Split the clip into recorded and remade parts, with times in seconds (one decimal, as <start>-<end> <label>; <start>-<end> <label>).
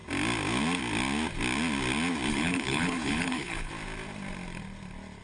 0.0-2.3 recorded; 2.3-3.7 remade; 3.7-5.2 recorded